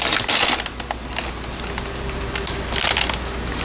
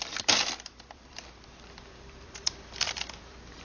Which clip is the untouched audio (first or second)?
first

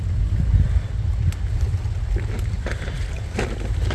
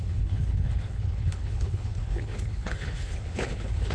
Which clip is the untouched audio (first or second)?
first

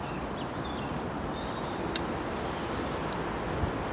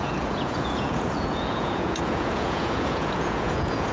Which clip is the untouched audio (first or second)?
first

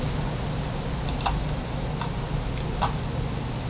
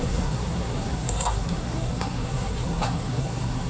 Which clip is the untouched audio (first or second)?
first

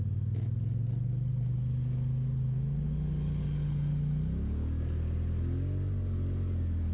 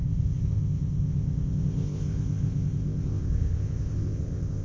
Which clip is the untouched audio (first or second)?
first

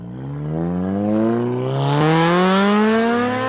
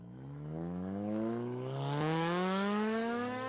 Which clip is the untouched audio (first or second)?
first